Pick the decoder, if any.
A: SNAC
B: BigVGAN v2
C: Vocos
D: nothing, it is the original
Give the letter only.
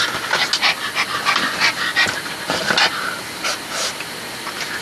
D